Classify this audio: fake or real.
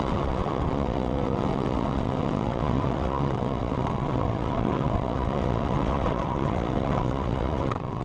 fake